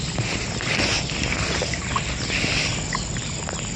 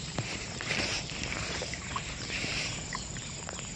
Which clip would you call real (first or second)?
first